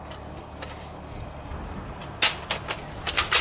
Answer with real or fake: real